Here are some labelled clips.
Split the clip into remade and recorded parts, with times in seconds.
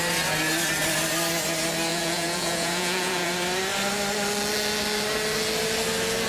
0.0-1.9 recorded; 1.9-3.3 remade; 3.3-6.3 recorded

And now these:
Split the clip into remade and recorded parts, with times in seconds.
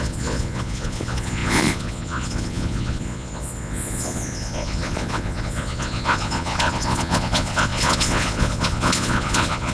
0.0-9.7 remade